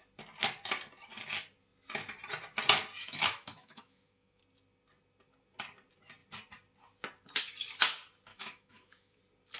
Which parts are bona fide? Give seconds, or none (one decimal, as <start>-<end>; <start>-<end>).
0.0-3.0; 4.4-8.3; 9.2-9.6